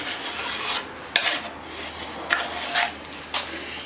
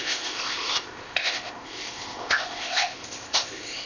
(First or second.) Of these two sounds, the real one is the first